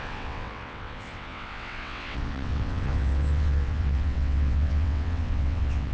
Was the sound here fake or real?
fake